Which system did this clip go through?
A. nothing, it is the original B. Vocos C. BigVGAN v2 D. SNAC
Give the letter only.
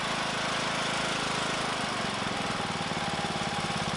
A